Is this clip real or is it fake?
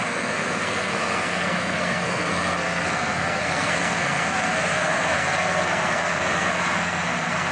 fake